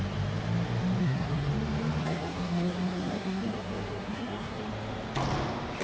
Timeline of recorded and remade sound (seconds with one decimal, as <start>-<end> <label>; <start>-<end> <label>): 0.0-1.0 recorded; 1.0-1.5 remade; 1.5-2.0 recorded; 2.0-4.6 remade; 4.6-5.8 recorded